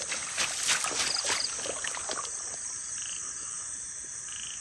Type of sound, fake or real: real